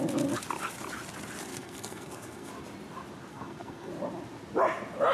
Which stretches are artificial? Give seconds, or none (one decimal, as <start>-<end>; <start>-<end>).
1.5-2.5; 3.3-3.9